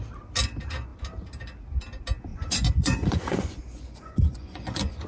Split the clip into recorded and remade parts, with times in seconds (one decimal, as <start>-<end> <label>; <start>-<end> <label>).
0.0-2.3 recorded; 2.3-5.1 remade

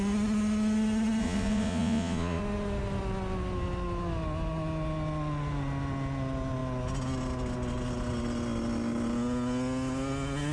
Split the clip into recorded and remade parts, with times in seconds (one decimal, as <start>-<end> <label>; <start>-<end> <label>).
0.0-1.2 recorded; 1.2-2.4 remade; 2.4-10.5 recorded

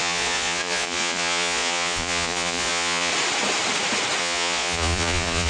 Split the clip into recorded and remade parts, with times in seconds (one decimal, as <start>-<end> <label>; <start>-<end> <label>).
0.0-3.1 remade; 3.1-4.2 recorded; 4.2-5.5 remade

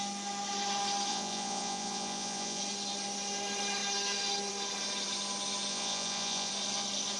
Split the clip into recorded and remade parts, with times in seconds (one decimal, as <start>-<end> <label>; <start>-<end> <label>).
0.0-1.1 recorded; 1.1-2.6 remade; 2.6-5.7 recorded; 5.7-6.5 remade; 6.5-7.2 recorded

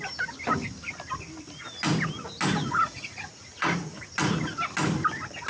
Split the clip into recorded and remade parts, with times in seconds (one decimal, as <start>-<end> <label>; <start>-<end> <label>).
0.0-2.6 recorded; 2.6-4.1 remade; 4.1-5.5 recorded